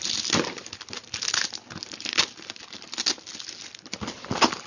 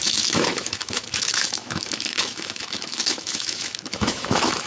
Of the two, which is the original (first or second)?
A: first